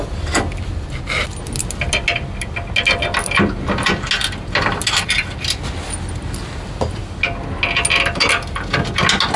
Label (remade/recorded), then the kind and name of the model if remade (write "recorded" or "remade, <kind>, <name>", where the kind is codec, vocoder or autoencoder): recorded